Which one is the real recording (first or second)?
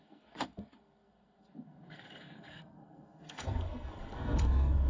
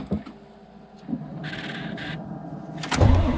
second